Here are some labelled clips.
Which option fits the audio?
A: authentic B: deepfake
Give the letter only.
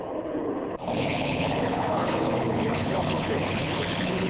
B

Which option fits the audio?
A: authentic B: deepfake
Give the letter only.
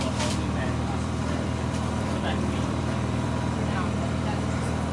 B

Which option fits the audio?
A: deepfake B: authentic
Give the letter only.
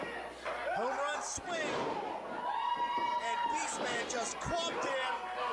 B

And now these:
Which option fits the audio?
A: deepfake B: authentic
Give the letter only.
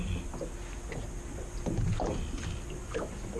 B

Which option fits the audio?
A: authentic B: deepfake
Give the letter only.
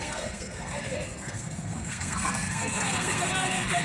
B